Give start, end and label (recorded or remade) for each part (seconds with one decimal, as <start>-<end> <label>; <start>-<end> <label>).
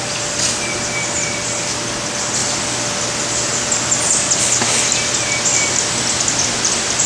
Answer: 0.0-7.1 recorded